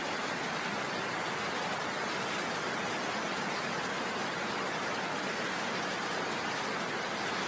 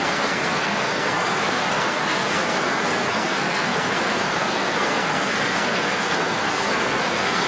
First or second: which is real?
first